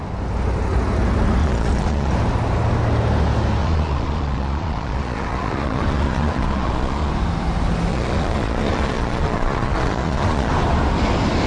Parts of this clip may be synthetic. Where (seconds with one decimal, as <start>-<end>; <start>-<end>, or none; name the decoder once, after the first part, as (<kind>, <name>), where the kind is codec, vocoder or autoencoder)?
1.4-2.1 (vocoder, Vocos); 3.6-7.1; 7.9-10.5